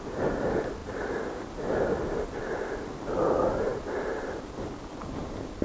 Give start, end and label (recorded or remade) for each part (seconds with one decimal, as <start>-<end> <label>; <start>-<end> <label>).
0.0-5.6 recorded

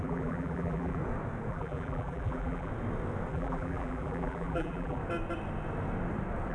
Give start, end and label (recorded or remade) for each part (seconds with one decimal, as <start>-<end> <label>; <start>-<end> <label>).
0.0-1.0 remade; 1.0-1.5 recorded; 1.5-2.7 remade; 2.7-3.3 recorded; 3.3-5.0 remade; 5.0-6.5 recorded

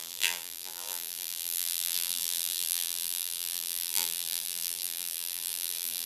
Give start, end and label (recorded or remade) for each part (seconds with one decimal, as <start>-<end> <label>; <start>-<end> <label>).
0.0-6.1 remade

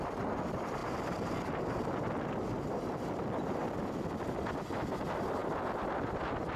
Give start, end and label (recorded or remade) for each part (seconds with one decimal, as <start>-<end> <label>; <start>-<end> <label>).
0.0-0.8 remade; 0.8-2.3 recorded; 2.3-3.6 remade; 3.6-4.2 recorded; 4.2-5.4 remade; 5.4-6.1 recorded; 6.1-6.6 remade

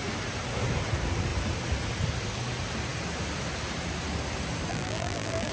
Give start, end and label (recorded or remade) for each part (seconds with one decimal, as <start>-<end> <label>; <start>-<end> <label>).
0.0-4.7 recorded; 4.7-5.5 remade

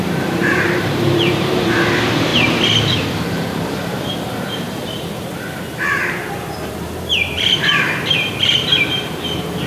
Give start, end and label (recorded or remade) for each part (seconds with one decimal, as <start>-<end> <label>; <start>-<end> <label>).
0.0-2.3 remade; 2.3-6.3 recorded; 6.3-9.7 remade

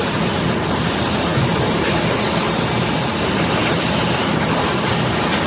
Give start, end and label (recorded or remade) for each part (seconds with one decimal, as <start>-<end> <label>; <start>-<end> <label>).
0.0-5.5 recorded